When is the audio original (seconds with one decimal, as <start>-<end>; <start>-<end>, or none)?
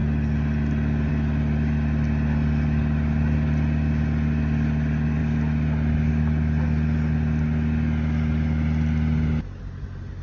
0.0-10.2